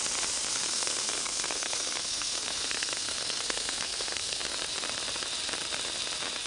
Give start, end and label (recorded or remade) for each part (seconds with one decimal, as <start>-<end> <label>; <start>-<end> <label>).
0.0-0.5 recorded; 0.5-4.4 remade; 4.4-6.5 recorded